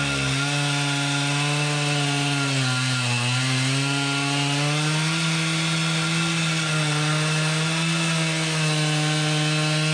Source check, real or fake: real